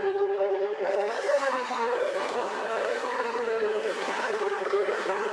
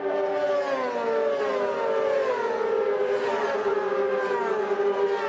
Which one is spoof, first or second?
first